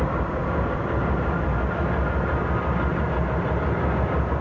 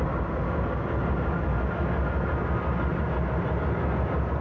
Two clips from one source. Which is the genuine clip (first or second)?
second